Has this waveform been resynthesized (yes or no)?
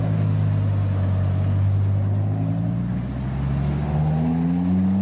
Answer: no